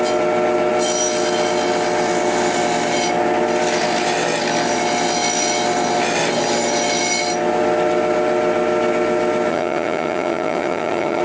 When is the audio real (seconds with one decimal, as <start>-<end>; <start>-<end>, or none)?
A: 0.0-9.5